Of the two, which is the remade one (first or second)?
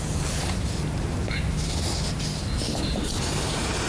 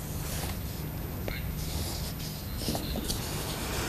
first